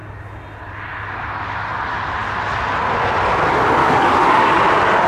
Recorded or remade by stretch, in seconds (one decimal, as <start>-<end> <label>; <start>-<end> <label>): 0.0-3.8 recorded; 3.8-4.6 remade; 4.6-5.1 recorded